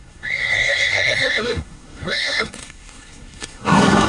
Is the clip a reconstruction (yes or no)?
yes